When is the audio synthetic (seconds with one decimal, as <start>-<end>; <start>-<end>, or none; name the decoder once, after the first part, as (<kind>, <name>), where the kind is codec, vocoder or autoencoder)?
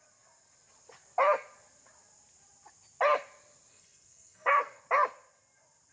3.7-4.8 (codec, SNAC)